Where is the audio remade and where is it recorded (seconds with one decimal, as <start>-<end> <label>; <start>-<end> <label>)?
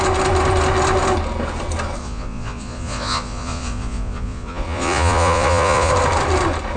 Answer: 0.0-2.0 recorded; 2.0-5.9 remade; 5.9-6.8 recorded